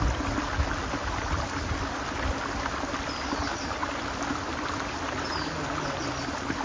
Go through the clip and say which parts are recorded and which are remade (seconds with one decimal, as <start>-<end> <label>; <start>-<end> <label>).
0.0-6.6 recorded